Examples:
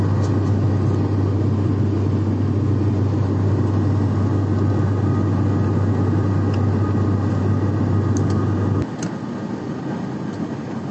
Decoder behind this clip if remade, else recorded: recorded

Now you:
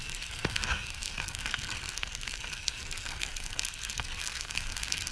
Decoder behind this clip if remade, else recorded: remade, codec, SNAC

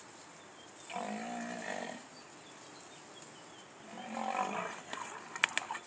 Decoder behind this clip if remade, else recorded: recorded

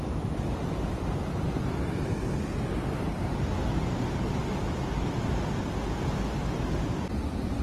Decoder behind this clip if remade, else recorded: recorded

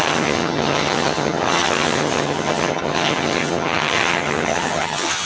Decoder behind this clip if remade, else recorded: remade, vocoder, HiFi-GAN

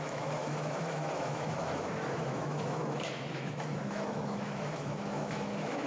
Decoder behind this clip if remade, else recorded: remade, autoencoder, DAC-VAE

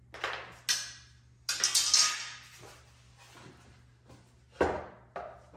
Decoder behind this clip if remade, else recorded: recorded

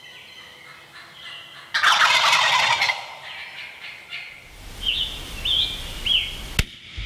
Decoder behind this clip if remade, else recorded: recorded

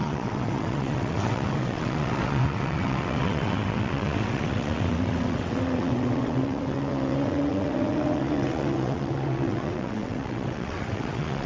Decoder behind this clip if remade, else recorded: remade, vocoder, WaveNeXt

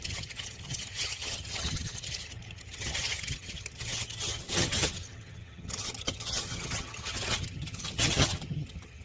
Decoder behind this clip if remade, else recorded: remade, vocoder, HiFi-GAN